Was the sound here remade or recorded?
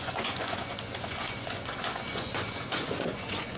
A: remade